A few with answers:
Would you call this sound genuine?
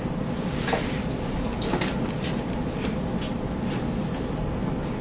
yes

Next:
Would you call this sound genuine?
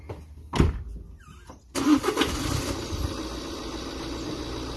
yes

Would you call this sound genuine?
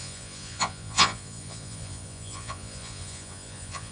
no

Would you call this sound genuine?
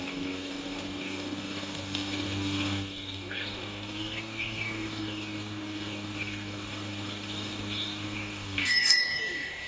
no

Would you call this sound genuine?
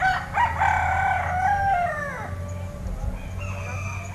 yes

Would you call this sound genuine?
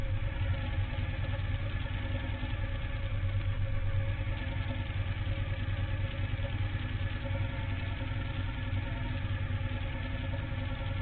yes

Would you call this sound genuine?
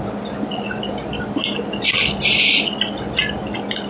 yes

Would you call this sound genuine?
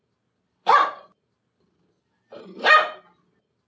yes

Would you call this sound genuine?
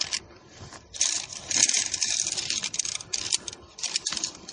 yes